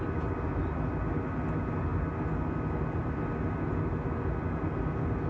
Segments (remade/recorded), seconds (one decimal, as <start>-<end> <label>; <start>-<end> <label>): 0.0-5.3 recorded